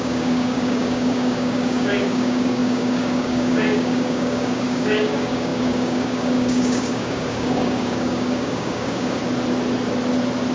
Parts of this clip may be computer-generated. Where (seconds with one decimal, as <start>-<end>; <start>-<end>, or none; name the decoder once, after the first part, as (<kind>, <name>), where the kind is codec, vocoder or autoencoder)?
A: 0.0-9.2 (codec, DAC)